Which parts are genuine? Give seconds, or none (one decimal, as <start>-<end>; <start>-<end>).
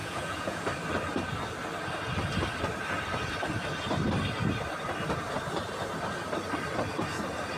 0.6-7.6